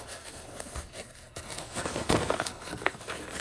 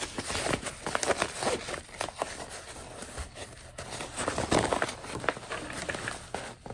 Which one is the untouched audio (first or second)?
second